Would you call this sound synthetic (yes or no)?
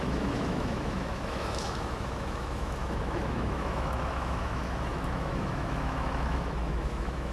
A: yes